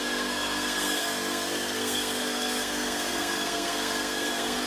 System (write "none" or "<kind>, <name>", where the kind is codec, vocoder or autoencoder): codec, SNAC